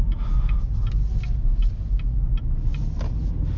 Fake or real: real